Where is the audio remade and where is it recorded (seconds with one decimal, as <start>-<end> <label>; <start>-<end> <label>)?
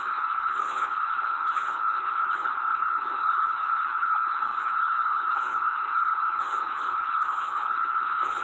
0.0-8.4 remade